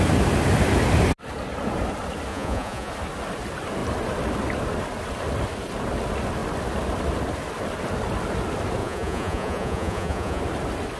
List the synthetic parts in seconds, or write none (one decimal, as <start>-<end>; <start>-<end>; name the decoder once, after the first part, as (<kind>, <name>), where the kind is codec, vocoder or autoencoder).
2.3-2.9 (vocoder, Vocos); 8.8-10.4